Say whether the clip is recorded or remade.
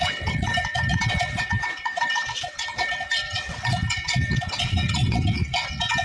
remade